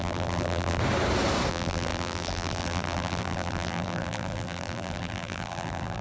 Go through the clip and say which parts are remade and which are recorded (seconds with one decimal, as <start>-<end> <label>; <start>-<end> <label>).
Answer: 0.0-0.8 remade; 0.8-1.5 recorded; 1.5-6.0 remade